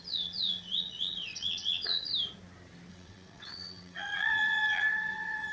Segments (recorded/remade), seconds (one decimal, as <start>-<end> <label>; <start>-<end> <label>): 0.0-2.1 remade; 2.1-2.9 recorded; 2.9-5.5 remade